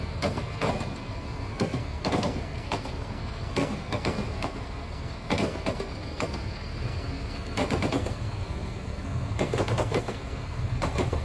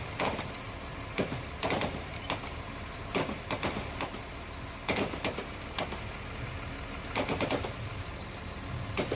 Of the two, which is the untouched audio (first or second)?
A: second